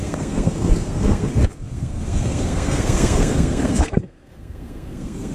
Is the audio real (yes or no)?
no